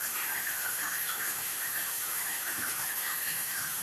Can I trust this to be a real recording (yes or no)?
no